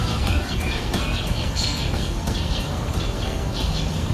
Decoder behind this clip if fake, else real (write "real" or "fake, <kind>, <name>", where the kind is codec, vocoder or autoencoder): fake, codec, SNAC